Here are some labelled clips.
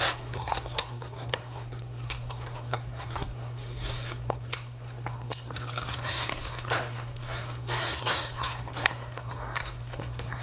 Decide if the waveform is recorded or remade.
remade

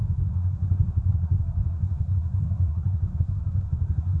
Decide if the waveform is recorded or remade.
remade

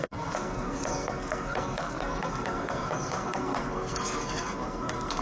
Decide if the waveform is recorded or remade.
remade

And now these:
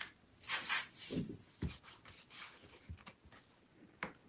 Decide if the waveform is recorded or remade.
recorded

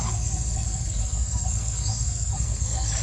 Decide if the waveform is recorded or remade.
remade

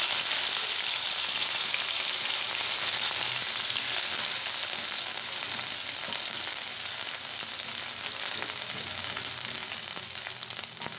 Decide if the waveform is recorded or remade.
recorded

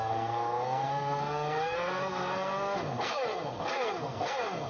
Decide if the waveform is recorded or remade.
remade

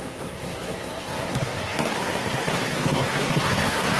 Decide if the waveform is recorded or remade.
remade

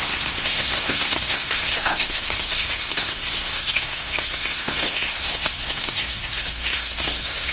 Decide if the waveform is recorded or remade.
remade